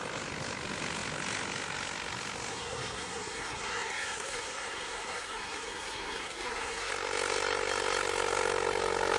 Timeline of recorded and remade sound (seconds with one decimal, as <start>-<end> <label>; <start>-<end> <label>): 0.0-2.5 recorded; 2.5-6.9 remade; 6.9-9.2 recorded